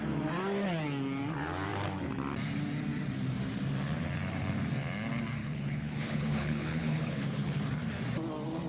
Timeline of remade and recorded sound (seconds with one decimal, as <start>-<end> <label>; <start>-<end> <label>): 0.0-5.4 recorded; 5.4-7.7 remade; 7.7-8.7 recorded